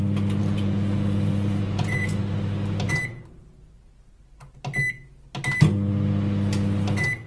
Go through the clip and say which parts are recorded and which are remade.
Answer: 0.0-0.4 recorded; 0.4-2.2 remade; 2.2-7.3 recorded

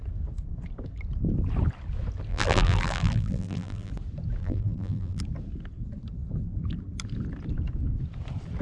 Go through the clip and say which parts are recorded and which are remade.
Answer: 0.0-2.3 recorded; 2.3-3.9 remade; 3.9-4.4 recorded; 4.4-5.2 remade; 5.2-8.6 recorded

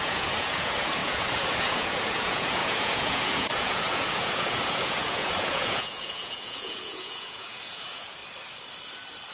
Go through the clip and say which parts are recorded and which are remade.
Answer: 0.0-8.2 remade; 8.2-9.3 recorded

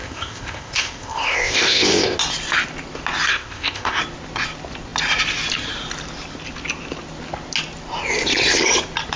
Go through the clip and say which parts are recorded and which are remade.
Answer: 0.0-2.2 remade; 2.2-3.3 recorded; 3.3-4.0 remade; 4.0-9.2 recorded

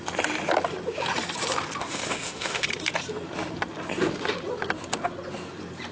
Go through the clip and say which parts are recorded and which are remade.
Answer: 0.0-1.8 recorded; 1.8-2.7 remade; 2.7-5.9 recorded

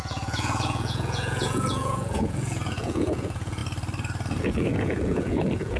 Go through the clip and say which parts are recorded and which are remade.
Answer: 0.0-3.6 remade; 3.6-4.4 recorded; 4.4-5.8 remade

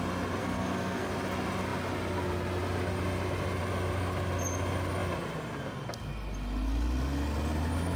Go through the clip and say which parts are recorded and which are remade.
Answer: 0.0-0.4 recorded; 0.4-1.1 remade; 1.1-8.0 recorded

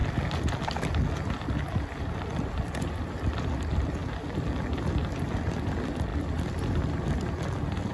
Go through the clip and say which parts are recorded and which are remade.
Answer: 0.0-6.1 recorded; 6.1-7.9 remade